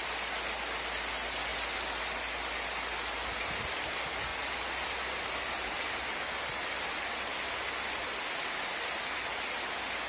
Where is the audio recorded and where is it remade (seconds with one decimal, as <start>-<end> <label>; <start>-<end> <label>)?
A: 0.0-10.1 recorded